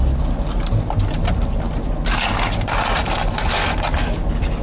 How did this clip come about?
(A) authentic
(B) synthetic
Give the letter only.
A